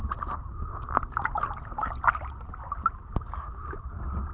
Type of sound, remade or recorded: recorded